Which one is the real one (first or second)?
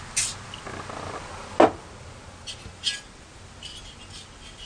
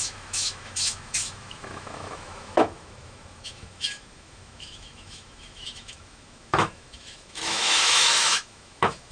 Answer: first